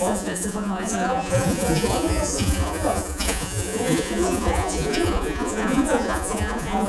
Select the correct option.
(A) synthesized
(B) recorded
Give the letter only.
A